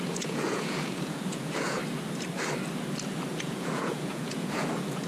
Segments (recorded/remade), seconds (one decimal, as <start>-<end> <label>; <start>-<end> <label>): 0.0-1.8 remade; 1.8-3.3 recorded; 3.3-5.1 remade

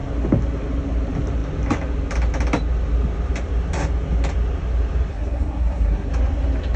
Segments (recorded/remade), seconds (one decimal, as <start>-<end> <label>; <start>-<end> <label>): 0.0-5.1 recorded; 5.1-6.1 remade; 6.1-6.8 recorded

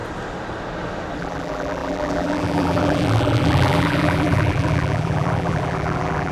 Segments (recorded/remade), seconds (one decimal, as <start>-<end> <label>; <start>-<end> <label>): 0.0-1.2 recorded; 1.2-6.3 remade

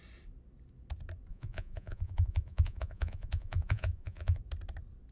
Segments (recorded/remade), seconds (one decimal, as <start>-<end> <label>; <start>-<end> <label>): 0.0-1.3 recorded; 1.3-4.4 remade; 4.4-5.1 recorded

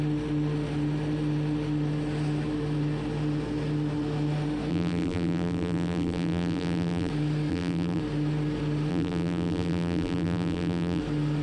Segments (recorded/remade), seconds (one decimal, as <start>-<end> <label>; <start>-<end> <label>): 0.0-4.7 recorded; 4.7-7.1 remade; 7.1-7.5 recorded; 7.5-8.0 remade; 8.0-8.9 recorded; 8.9-11.0 remade; 11.0-11.4 recorded

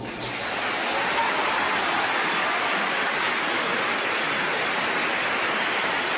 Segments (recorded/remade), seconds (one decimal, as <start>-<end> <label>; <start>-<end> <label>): 0.0-6.2 recorded

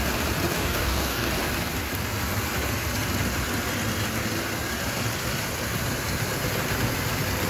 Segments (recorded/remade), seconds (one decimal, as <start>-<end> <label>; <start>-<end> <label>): 0.0-0.5 recorded; 0.5-1.3 remade; 1.3-7.5 recorded

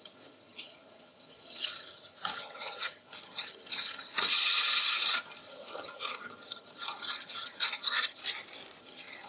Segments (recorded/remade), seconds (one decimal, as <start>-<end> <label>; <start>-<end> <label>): 0.0-8.2 remade; 8.2-8.8 recorded; 8.8-9.3 remade